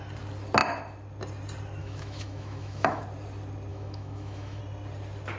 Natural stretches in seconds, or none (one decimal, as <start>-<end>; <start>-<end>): 0.0-1.8; 3.0-3.7; 4.6-5.4